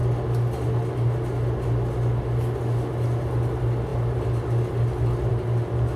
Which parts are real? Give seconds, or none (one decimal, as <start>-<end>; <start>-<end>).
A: 0.0-6.0